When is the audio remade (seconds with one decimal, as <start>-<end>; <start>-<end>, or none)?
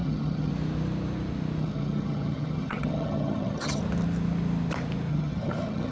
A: 0.0-0.5; 1.6-3.8; 5.1-5.9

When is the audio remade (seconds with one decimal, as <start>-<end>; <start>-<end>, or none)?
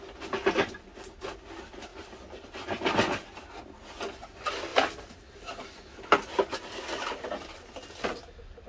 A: none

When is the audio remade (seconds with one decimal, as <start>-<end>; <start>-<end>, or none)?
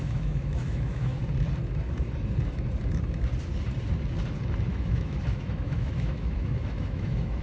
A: 0.0-1.2; 4.7-7.4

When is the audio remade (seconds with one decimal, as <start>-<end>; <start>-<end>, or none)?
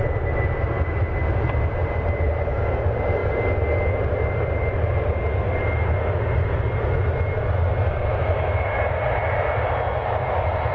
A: 1.8-2.6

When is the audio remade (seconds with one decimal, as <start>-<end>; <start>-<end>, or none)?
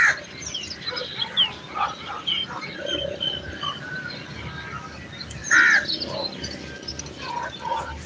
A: none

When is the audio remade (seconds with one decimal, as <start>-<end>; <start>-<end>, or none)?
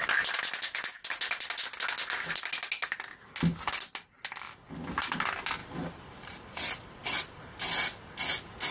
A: none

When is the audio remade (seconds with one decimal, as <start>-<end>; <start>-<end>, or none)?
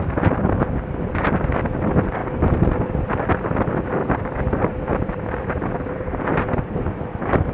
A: 2.2-3.1; 4.0-7.5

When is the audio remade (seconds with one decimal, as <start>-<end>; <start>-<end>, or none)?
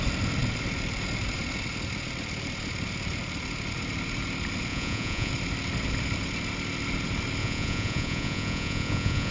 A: 4.7-5.3; 7.4-9.3